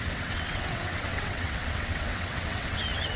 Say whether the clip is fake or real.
fake